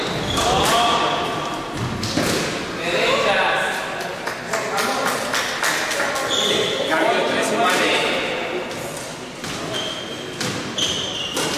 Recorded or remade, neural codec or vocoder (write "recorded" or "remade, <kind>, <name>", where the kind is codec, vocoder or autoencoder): recorded